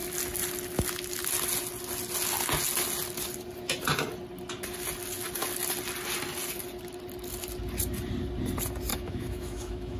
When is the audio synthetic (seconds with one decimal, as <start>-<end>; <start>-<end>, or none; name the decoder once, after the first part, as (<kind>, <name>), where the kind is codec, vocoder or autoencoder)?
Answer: 8.9-10.0 (autoencoder, DAC-VAE)